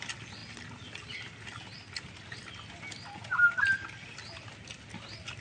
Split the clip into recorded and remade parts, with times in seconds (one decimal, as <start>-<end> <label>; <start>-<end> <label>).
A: 0.0-5.4 recorded